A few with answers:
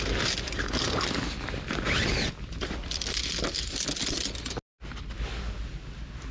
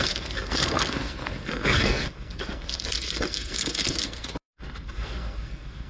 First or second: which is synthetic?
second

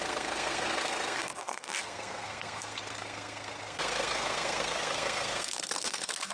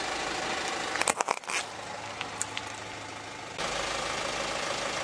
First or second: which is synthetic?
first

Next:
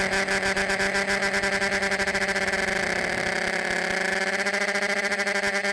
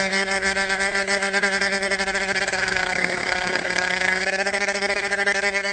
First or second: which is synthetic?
second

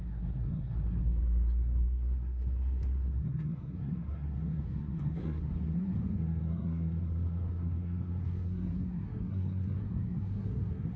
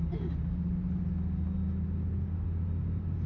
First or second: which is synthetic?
first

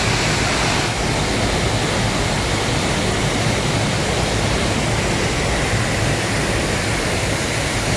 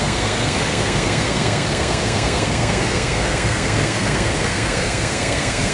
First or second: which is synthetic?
second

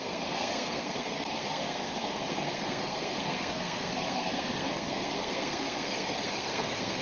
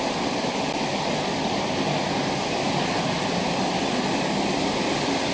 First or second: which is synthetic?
first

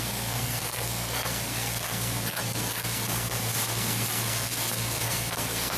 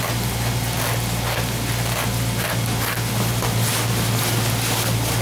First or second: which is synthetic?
first